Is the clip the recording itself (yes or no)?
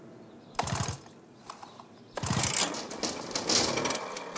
yes